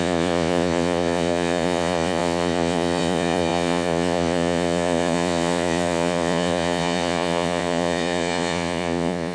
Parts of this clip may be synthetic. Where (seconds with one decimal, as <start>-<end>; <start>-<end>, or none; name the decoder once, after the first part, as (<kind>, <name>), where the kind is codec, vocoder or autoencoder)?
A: 0.0-9.3 (vocoder, Vocos)